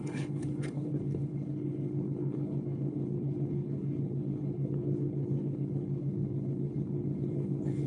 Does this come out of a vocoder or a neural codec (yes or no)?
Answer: yes